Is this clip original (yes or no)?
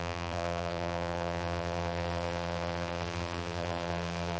no